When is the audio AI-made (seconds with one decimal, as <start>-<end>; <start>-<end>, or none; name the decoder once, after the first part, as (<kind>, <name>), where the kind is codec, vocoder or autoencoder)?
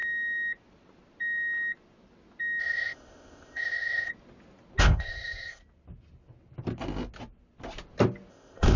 2.6-4.1 (codec, ZipCodec); 4.8-5.6; 8.3-8.8